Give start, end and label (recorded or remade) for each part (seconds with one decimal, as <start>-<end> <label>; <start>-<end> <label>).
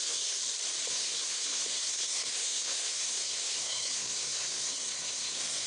0.0-0.4 remade; 0.4-0.9 recorded; 0.9-5.7 remade